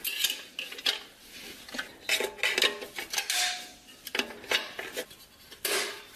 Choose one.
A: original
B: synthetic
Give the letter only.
A